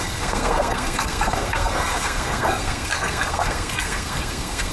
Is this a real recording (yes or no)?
no